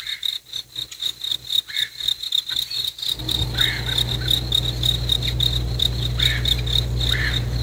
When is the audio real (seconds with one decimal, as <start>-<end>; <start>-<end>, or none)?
1.3-3.2